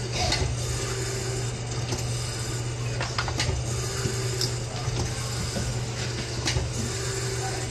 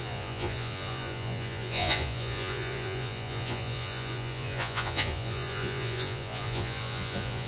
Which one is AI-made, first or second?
second